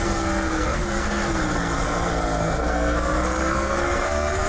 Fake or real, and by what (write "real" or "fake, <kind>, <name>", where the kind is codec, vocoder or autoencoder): fake, codec, SNAC